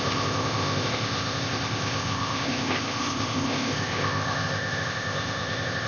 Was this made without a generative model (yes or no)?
no